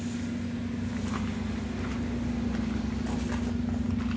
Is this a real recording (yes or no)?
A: yes